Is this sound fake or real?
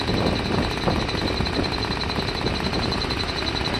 real